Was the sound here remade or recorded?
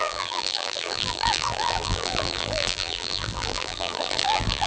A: remade